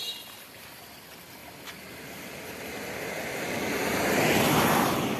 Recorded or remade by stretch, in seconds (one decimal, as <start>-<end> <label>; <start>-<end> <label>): 0.0-5.2 recorded